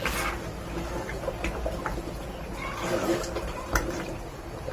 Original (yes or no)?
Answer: no